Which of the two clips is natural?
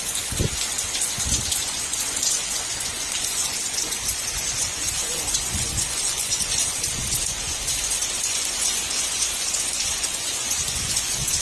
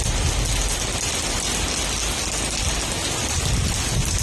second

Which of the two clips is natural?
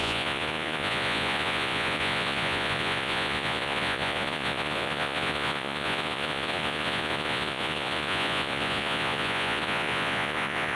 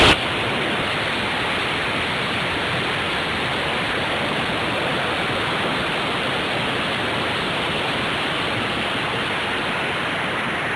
second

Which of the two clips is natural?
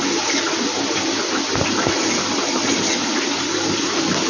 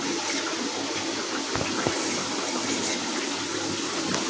second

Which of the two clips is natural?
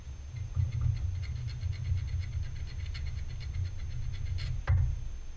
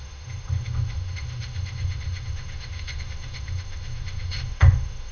first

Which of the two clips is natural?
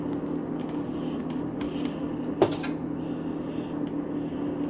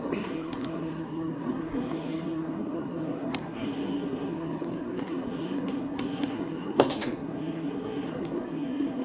first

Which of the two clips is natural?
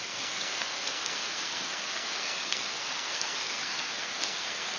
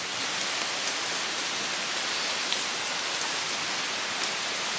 second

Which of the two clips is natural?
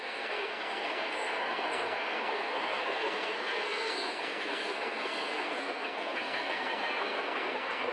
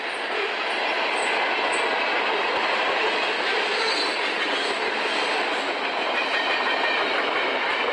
second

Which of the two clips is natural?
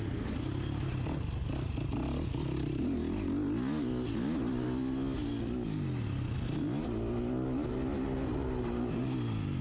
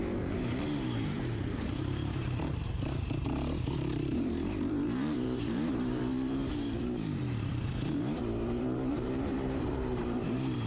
first